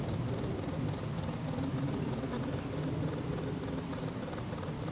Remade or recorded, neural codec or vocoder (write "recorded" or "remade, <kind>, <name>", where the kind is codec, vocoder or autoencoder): recorded